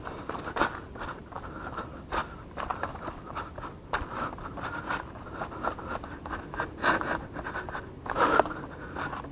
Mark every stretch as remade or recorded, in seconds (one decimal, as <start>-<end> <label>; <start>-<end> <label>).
0.0-9.3 recorded